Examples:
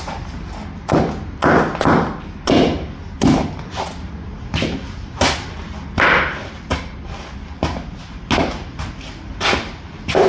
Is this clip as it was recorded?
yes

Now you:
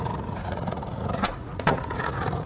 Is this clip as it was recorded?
no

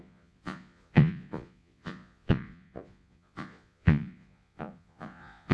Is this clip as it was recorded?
no